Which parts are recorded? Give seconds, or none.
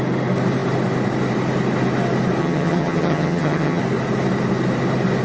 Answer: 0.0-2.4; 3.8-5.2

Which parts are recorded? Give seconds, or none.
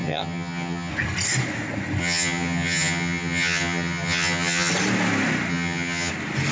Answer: 0.9-2.0; 4.7-5.5; 6.1-6.5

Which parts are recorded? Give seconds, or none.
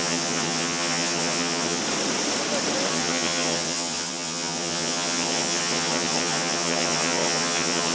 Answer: 1.8-2.9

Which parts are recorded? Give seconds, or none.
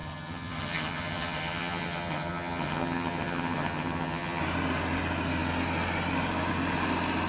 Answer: 4.4-7.3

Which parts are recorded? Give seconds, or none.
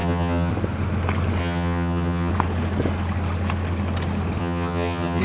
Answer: 0.5-1.4; 2.3-4.4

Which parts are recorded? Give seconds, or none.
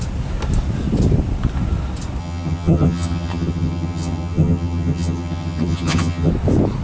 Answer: 0.0-2.2; 6.3-6.8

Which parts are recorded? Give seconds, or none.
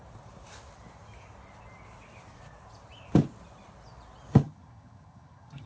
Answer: 0.0-4.4